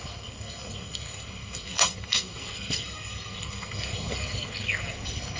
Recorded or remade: remade